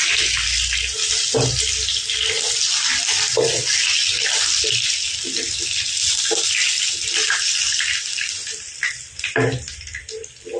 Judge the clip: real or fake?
real